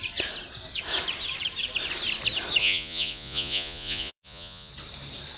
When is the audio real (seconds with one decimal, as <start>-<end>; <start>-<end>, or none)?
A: 0.0-2.6; 4.7-5.4